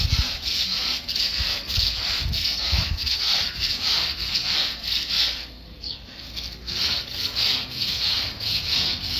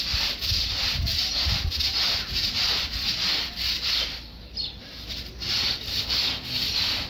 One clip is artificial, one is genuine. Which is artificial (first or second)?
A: first